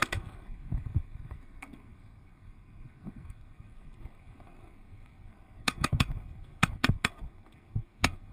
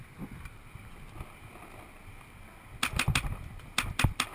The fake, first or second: first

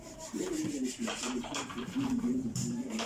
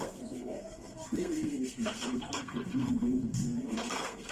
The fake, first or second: second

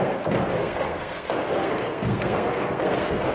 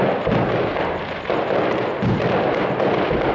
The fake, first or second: first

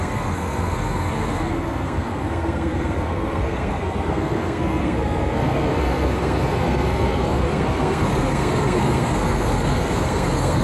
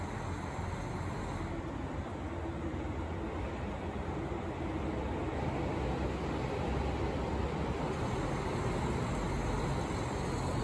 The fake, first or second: first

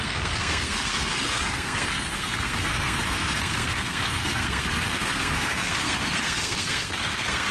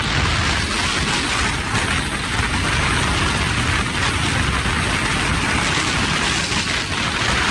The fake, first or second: first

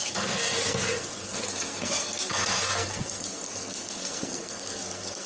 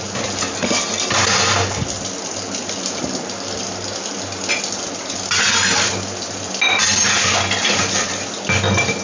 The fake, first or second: first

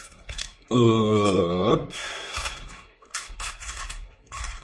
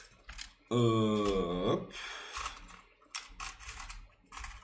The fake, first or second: first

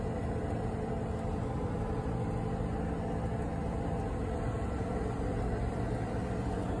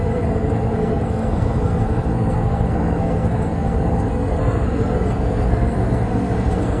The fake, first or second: second